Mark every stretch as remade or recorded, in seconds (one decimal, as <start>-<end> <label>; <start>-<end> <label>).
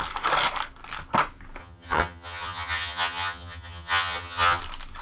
0.0-1.6 recorded; 1.6-4.6 remade; 4.6-5.0 recorded